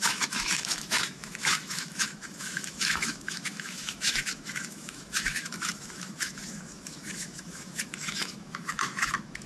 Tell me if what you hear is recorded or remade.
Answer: remade